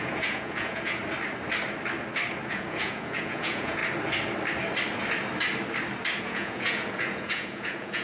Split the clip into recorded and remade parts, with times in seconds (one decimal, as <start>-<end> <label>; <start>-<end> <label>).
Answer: 0.0-1.0 remade; 1.0-2.5 recorded; 2.5-3.8 remade; 3.8-6.2 recorded; 6.2-8.0 remade